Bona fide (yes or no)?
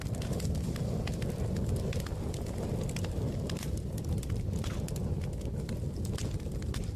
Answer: yes